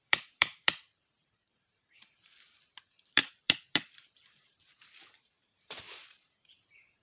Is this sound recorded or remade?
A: remade